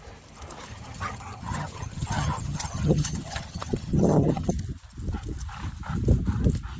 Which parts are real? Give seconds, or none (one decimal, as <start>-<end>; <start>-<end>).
0.0-0.7; 4.5-6.8